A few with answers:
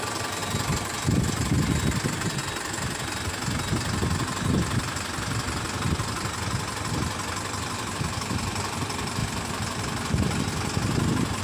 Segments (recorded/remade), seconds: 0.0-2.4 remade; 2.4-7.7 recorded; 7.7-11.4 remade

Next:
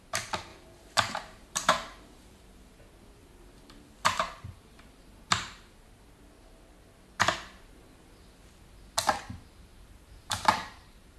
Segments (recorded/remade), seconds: 0.0-0.5 recorded; 0.5-2.7 remade; 2.7-3.2 recorded; 3.2-5.9 remade; 5.9-9.7 recorded; 9.7-11.2 remade

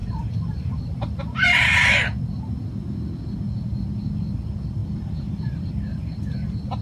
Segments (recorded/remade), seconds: 0.0-1.9 remade; 1.9-4.8 recorded; 4.8-5.7 remade; 5.7-6.8 recorded

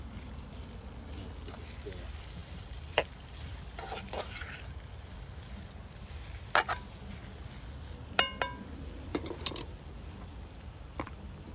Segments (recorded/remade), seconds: 0.0-2.4 recorded; 2.4-6.4 remade; 6.4-9.1 recorded; 9.1-11.1 remade; 11.1-11.5 recorded

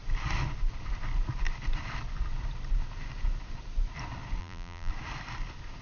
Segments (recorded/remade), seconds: 0.0-4.4 recorded; 4.4-4.9 remade; 4.9-5.8 recorded